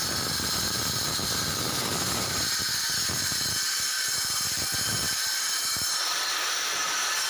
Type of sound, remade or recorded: recorded